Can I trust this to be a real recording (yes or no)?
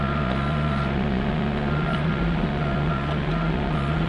no